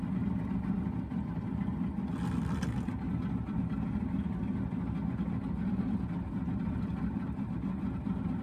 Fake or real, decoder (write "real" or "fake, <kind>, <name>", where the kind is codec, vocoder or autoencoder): real